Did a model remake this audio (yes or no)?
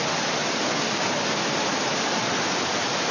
no